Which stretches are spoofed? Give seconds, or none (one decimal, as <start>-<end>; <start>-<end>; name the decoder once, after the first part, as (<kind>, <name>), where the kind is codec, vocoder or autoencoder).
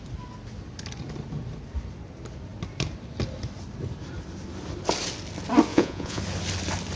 5.7-6.2 (vocoder, Vocos)